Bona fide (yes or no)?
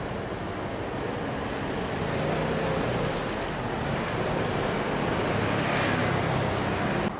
yes